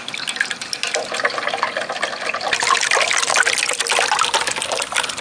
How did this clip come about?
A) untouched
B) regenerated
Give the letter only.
A